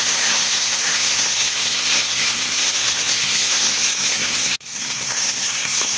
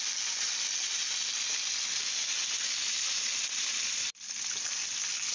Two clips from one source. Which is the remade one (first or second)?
first